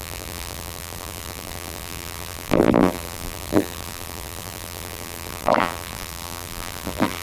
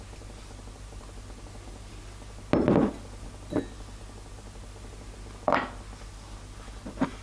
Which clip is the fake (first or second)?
first